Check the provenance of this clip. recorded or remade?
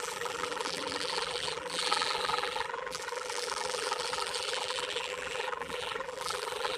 remade